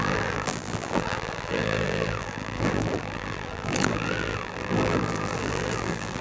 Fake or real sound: fake